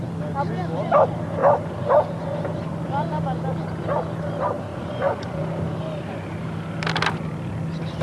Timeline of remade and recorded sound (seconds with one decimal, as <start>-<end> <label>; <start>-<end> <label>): 0.0-4.7 recorded; 4.7-5.4 remade; 5.4-8.0 recorded